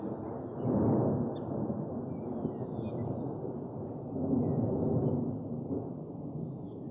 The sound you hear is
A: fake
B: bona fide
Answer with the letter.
B